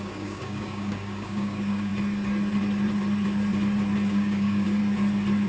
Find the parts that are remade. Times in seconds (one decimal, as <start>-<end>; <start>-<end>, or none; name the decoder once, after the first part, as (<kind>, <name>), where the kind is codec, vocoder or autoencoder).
0.0-1.9 (codec, DAC); 4.1-4.8